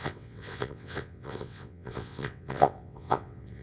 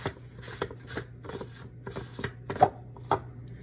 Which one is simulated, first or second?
first